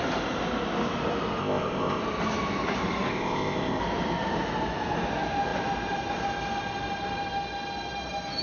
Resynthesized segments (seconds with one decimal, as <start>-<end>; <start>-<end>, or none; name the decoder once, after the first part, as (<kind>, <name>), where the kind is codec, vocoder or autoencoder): 1.4-2.0 (codec, ZipCodec); 3.1-3.8